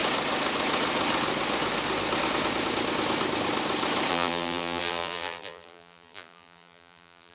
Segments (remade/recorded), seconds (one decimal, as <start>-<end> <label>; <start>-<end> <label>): 0.0-4.1 recorded; 4.1-7.3 remade